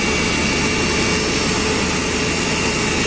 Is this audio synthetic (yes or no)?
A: no